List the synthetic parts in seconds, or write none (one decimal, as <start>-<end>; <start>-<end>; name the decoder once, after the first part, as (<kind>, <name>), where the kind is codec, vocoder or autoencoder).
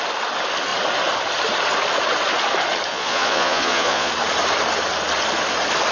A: 2.9-4.1 (vocoder, Vocos)